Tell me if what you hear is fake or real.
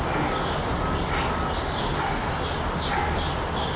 real